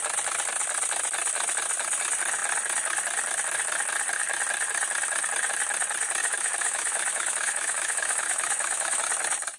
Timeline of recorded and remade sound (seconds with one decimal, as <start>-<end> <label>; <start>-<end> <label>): 0.0-6.2 recorded; 6.2-9.0 remade; 9.0-9.6 recorded